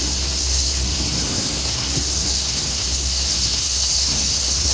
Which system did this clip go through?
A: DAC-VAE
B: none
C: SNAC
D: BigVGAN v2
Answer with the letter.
C